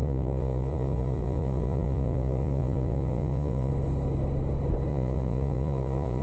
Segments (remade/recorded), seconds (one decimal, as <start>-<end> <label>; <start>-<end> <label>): 0.0-3.7 remade; 3.7-4.9 recorded; 4.9-6.2 remade